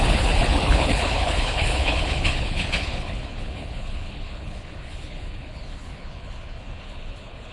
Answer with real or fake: fake